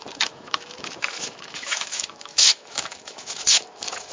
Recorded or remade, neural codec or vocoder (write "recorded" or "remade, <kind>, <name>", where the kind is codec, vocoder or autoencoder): remade, autoencoder, DAC-VAE